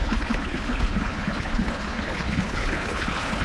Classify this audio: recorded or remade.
remade